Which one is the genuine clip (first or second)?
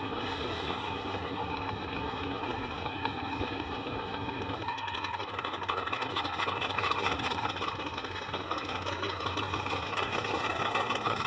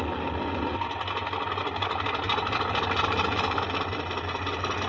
second